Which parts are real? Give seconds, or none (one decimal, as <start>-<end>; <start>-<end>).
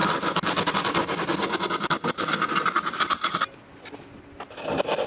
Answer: 0.0-5.1